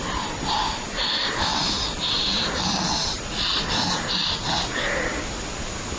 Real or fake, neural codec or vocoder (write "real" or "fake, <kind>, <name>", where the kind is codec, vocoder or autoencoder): real